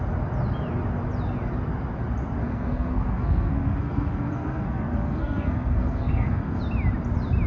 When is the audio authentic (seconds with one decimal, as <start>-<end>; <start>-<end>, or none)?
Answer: 0.0-2.4; 6.6-7.5